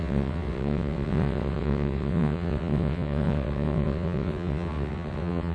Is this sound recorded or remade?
remade